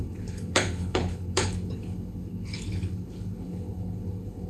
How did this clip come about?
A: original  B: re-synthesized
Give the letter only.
B